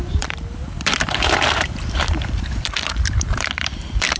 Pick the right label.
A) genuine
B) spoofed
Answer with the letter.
B